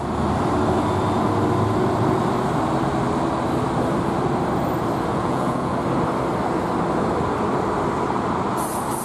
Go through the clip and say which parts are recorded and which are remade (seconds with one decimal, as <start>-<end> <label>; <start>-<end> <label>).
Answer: 0.0-5.1 recorded; 5.1-5.8 remade; 5.8-9.0 recorded